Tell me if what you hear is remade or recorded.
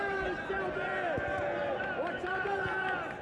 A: recorded